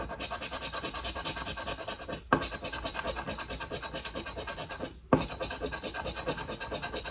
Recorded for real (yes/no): yes